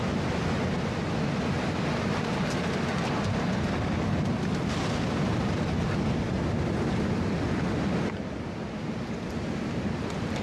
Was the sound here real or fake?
real